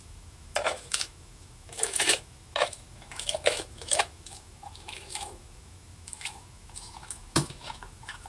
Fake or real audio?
fake